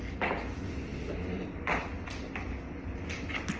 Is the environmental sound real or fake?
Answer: real